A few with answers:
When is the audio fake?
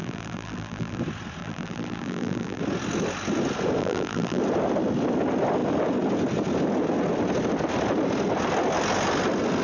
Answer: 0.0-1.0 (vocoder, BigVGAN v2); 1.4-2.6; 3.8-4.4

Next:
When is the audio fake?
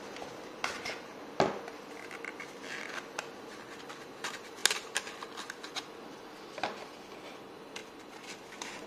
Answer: none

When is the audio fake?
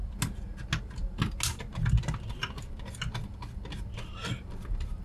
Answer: none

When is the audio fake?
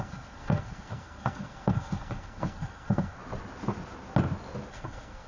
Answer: 0.0-3.2 (codec, SNAC); 4.7-5.3